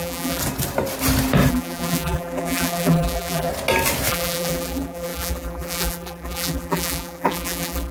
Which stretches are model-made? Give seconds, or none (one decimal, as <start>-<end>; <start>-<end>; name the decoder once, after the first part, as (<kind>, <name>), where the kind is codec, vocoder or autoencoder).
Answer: 0.0-0.4 (vocoder, BigVGAN v2); 1.5-3.5; 4.1-7.9